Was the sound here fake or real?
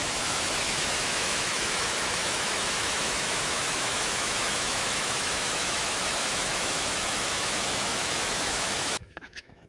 fake